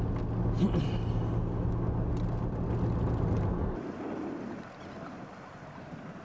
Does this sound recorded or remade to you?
recorded